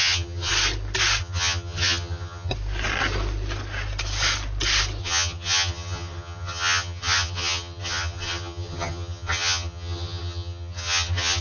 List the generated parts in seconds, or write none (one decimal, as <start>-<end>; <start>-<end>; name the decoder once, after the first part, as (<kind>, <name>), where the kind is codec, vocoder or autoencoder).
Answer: 0.0-0.5 (vocoder, HiFi-GAN); 1.2-2.5; 5.0-11.4